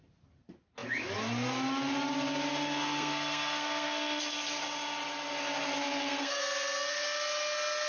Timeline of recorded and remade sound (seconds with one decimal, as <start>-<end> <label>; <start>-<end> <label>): 0.0-2.6 recorded; 2.6-4.2 remade; 4.2-5.8 recorded; 5.8-6.4 remade; 6.4-7.9 recorded